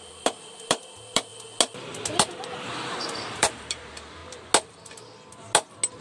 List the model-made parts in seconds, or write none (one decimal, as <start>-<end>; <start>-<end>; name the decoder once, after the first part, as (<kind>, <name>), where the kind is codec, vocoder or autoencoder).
0.0-1.3 (vocoder, BigVGAN v2); 2.4-4.2